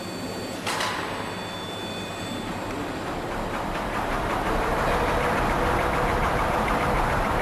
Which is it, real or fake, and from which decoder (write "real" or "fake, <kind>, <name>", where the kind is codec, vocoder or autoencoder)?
fake, vocoder, BigVGAN v2